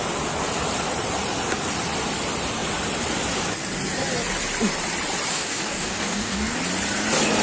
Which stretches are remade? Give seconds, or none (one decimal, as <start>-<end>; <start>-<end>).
5.3-6.6